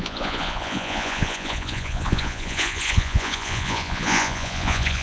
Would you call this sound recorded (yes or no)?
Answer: no